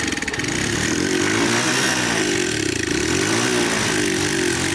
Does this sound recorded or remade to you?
recorded